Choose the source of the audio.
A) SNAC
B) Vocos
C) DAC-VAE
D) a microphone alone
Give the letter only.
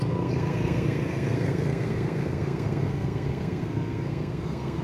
A